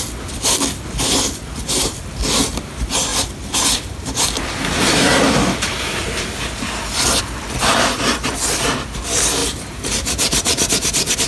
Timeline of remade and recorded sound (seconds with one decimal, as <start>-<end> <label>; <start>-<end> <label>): 0.0-9.4 recorded; 9.4-11.3 remade